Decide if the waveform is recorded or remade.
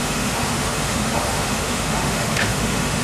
remade